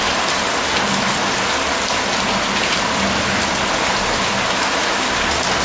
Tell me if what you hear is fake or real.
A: real